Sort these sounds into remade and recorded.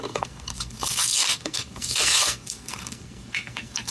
remade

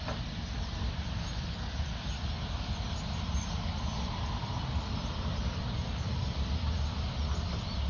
remade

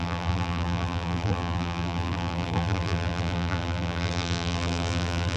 remade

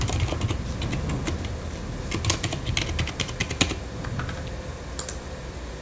recorded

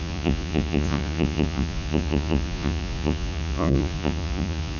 remade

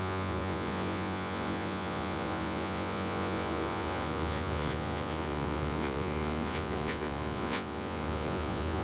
remade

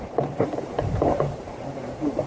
remade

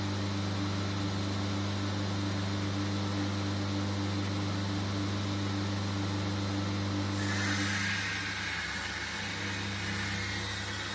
recorded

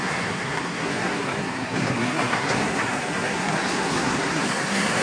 remade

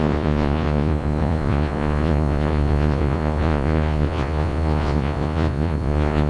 remade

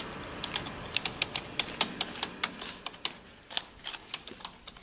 recorded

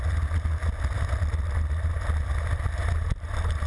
recorded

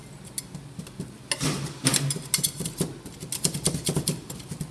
recorded